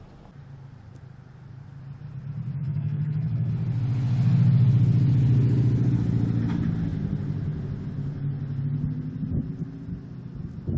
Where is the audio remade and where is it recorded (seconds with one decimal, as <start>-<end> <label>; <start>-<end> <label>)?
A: 0.0-2.6 recorded; 2.6-3.5 remade; 3.5-10.8 recorded